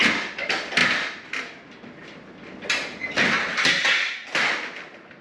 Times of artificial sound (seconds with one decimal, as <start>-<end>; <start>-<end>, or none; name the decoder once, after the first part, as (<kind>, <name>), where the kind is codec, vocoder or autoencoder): none